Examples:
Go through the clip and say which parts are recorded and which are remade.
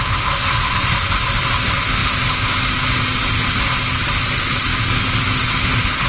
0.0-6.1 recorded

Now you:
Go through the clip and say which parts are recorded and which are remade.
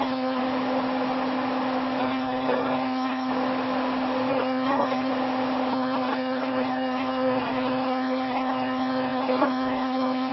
0.0-0.4 remade; 0.4-2.0 recorded; 2.0-3.3 remade; 3.3-4.3 recorded; 4.3-5.1 remade; 5.1-5.7 recorded; 5.7-10.3 remade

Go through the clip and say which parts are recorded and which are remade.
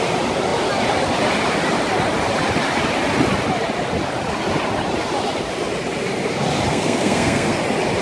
0.0-6.7 recorded; 6.7-7.6 remade; 7.6-8.0 recorded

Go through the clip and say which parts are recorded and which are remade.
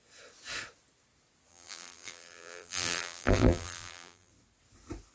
0.0-1.5 recorded; 1.5-4.3 remade; 4.3-5.1 recorded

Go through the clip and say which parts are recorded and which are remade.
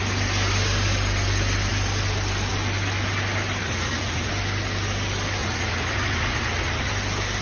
0.0-3.6 recorded; 3.6-4.3 remade; 4.3-5.4 recorded; 5.4-6.9 remade; 6.9-7.4 recorded